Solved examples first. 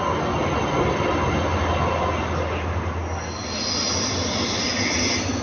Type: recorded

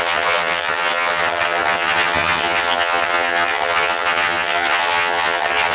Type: remade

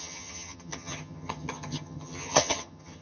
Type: remade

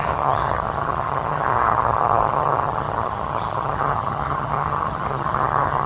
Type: remade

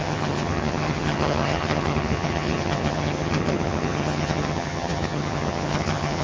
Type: remade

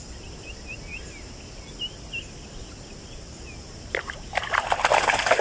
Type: recorded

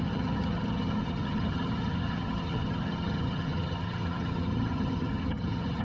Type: remade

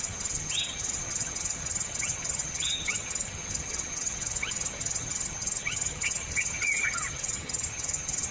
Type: remade